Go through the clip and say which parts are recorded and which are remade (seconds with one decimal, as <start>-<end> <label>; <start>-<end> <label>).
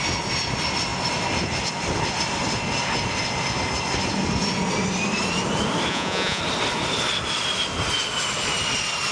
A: 0.0-5.9 recorded; 5.9-6.4 remade; 6.4-9.1 recorded